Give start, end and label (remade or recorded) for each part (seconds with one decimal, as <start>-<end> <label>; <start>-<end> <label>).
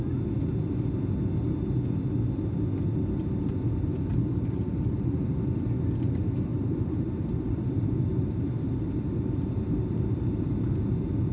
0.0-3.9 recorded; 3.9-5.3 remade; 5.3-6.5 recorded; 6.5-10.9 remade; 10.9-11.3 recorded